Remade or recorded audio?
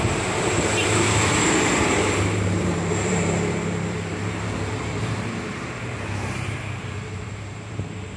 remade